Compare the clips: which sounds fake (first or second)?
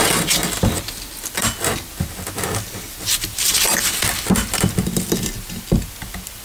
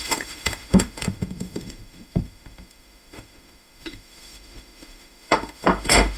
second